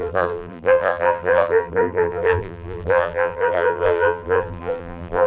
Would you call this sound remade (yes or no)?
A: yes